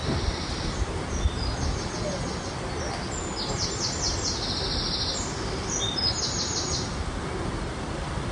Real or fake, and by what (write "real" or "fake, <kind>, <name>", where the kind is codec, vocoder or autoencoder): real